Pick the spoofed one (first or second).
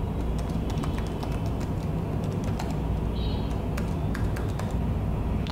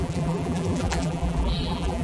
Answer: second